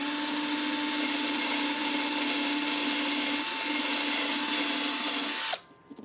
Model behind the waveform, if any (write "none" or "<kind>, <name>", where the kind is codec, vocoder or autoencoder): none